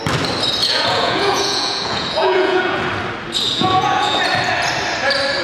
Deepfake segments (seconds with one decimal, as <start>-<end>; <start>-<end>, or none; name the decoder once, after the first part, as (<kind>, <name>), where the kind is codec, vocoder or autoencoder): 0.6-2.8 (vocoder, Vocos); 3.5-4.2